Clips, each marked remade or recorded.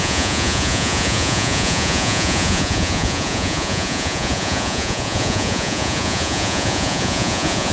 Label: remade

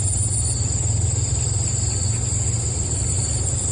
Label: remade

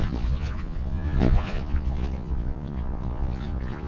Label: remade